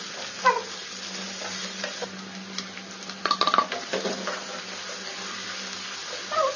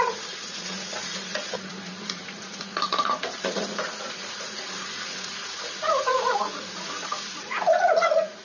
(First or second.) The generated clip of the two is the second